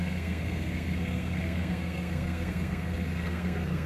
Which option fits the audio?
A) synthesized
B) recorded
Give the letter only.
A